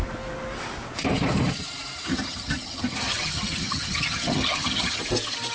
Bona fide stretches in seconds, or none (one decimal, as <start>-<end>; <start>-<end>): 0.0-2.1; 5.0-5.5